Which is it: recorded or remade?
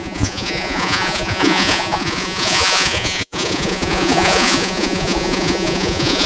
remade